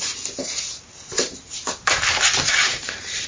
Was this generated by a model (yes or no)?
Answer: no